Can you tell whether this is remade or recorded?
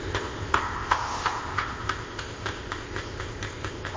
remade